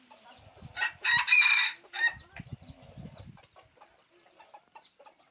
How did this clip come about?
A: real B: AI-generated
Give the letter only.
A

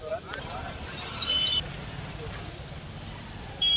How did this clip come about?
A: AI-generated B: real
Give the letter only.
B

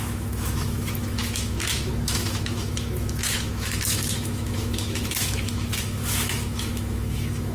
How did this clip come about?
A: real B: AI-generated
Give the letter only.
B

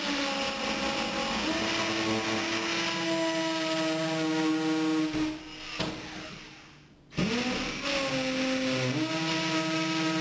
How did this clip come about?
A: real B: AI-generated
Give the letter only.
A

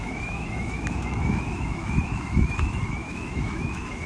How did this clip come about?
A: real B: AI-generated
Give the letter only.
B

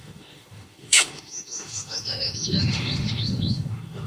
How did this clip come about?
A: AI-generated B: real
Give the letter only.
A